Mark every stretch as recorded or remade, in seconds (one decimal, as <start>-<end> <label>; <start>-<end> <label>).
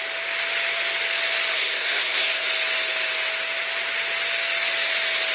0.0-1.5 recorded; 1.5-2.5 remade; 2.5-5.3 recorded